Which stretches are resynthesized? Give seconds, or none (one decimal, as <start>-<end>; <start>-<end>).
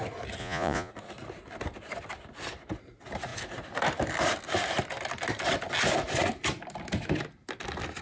0.4-0.9